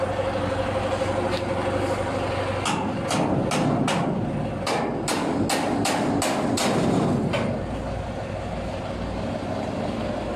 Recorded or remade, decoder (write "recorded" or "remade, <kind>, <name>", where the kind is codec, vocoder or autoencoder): recorded